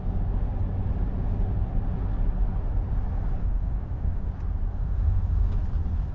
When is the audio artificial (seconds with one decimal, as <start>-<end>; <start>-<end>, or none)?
3.4-4.3; 4.7-5.5